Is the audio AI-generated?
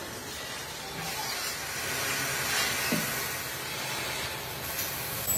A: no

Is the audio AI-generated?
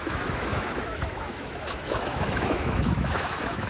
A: yes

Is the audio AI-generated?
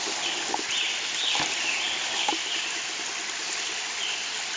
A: no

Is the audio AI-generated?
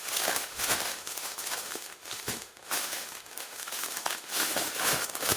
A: yes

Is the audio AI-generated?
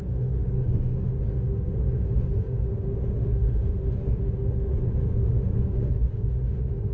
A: yes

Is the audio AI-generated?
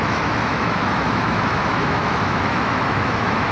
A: yes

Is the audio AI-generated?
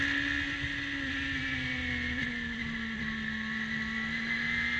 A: no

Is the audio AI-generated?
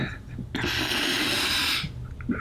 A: no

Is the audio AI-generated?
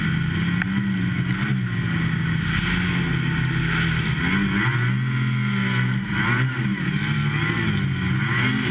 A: no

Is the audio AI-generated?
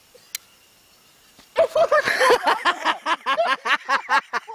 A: no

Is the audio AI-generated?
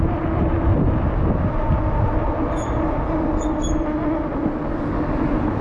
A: no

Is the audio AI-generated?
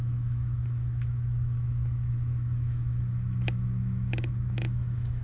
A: yes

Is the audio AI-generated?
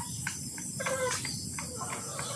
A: no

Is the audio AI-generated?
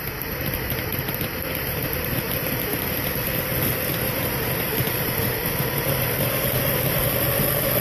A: no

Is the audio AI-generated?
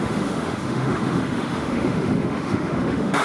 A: yes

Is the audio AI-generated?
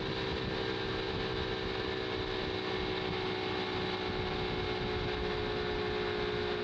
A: no